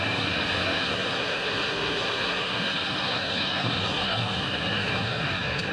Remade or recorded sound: remade